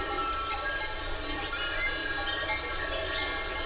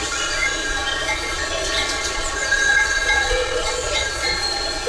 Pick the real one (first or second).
first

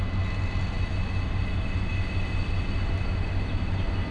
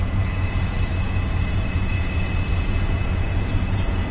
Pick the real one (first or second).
first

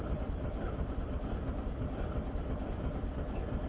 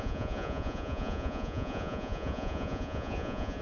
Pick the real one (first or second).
first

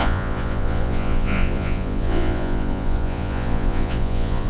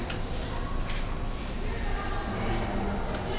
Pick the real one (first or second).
second